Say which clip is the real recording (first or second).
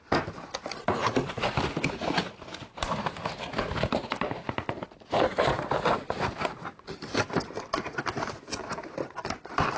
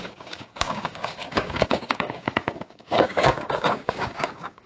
first